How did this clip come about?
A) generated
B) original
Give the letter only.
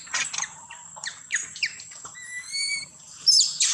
A